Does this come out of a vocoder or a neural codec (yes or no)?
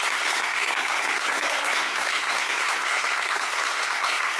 yes